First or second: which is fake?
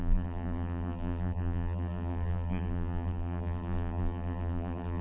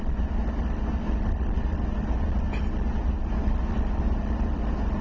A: first